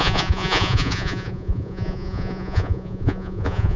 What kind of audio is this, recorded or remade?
remade